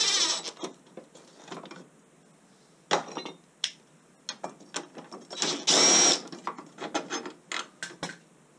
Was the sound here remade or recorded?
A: recorded